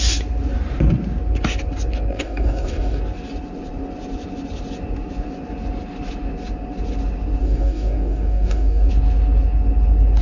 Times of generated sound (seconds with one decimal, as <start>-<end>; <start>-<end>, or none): 2.1-3.0; 7.4-8.9